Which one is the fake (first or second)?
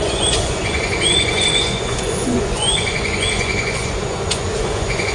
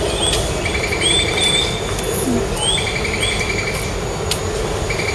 first